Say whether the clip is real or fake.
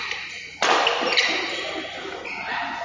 real